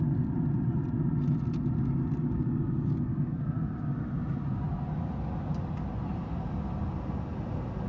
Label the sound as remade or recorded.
recorded